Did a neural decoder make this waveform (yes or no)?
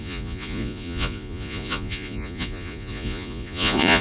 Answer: yes